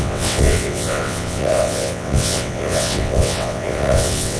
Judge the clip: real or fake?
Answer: fake